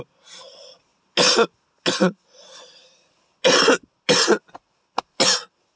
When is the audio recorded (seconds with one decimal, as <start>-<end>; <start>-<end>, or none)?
0.0-5.8